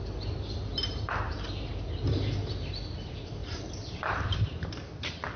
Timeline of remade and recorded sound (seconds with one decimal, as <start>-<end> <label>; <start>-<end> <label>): 0.0-0.7 recorded; 0.7-1.3 remade; 1.3-3.4 recorded; 3.4-4.7 remade; 4.7-5.4 recorded